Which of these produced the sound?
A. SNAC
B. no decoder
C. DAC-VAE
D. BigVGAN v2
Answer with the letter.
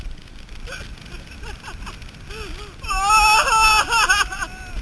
B